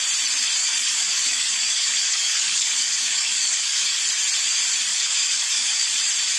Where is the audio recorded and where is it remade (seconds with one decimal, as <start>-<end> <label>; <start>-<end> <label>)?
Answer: 0.0-0.6 recorded; 0.6-4.0 remade; 4.0-4.9 recorded; 4.9-6.0 remade; 6.0-6.4 recorded